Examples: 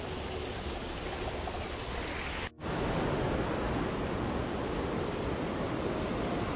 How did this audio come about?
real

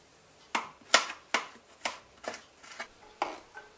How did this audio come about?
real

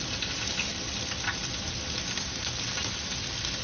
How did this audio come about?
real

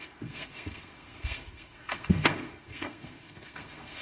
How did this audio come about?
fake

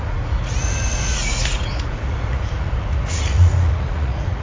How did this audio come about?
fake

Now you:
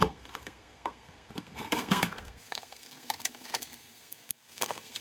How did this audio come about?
fake